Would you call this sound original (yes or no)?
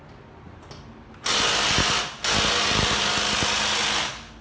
yes